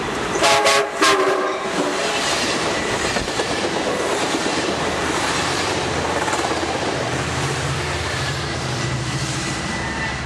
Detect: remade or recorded remade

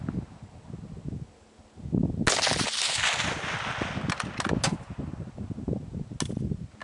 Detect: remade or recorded recorded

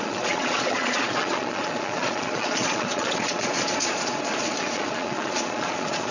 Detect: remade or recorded remade